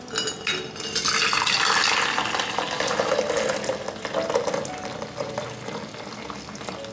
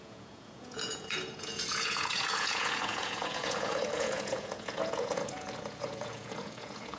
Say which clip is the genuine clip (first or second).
first